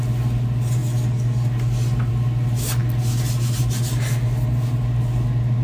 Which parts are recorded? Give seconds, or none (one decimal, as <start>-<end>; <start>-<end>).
0.0-5.6